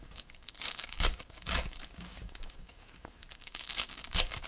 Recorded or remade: remade